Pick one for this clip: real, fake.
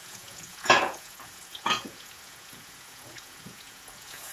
fake